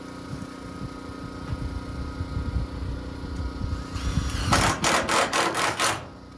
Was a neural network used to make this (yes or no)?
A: no